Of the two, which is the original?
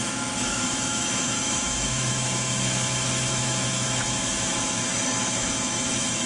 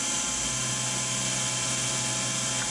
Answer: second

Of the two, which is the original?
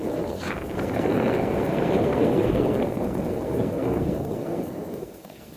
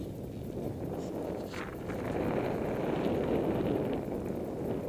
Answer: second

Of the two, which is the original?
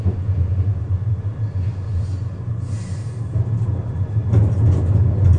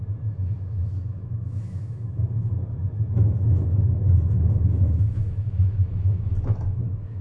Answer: first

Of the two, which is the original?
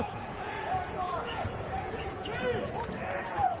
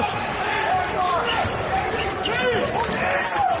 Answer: second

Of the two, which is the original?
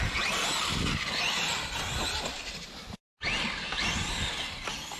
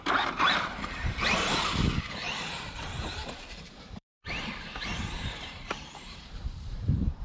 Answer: first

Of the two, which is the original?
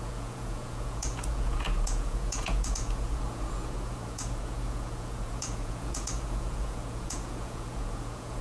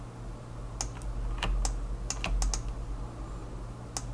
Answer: second